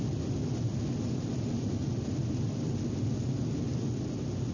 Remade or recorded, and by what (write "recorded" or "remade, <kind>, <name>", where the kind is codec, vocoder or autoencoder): recorded